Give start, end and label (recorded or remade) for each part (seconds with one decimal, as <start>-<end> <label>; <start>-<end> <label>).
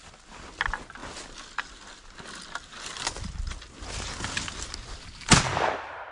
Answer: 0.0-6.1 recorded